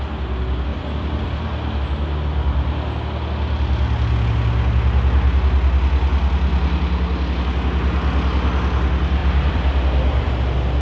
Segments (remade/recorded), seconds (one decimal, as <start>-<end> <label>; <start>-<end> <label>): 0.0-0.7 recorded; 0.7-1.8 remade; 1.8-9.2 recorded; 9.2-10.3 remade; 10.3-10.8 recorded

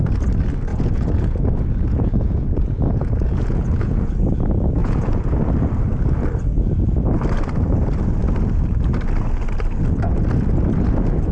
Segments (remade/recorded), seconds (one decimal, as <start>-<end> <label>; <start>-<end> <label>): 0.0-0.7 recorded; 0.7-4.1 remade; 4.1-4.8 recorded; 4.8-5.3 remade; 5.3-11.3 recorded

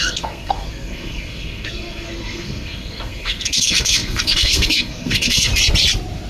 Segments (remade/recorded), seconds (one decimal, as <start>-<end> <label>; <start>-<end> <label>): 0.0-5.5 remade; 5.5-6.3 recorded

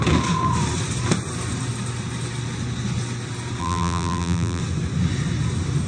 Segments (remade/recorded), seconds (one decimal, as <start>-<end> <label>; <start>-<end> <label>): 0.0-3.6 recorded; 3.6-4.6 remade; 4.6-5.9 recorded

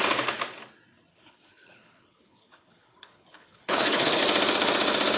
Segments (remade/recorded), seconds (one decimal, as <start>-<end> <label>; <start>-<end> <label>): 0.0-1.1 recorded; 1.1-4.2 remade; 4.2-5.2 recorded